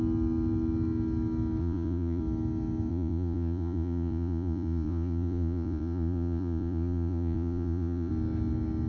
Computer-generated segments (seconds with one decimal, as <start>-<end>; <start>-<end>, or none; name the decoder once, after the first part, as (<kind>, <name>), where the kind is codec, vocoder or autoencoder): 1.6-2.2 (vocoder, Vocos); 2.9-8.1